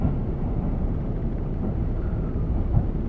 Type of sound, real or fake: fake